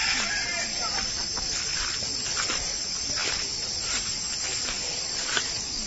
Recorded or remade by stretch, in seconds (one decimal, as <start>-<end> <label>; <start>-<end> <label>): 0.0-3.2 recorded; 3.2-4.0 remade; 4.0-5.9 recorded

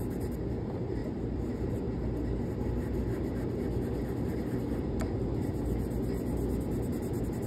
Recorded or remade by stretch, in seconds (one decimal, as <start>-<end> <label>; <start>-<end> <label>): 0.0-7.5 recorded

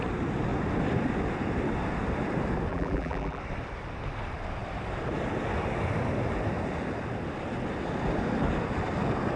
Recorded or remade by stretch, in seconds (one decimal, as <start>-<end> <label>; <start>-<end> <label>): 0.0-2.7 recorded; 2.7-3.4 remade; 3.4-9.4 recorded